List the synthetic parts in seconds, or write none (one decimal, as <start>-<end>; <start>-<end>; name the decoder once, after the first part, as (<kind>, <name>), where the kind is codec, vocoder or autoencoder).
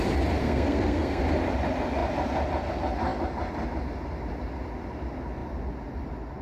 0.4-1.2 (codec, SNAC)